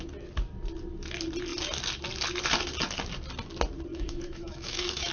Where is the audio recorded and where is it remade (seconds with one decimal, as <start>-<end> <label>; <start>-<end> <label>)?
0.0-3.9 recorded; 3.9-5.1 remade